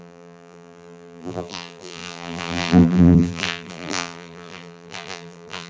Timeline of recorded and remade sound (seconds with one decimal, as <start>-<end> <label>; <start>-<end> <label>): 0.0-5.7 remade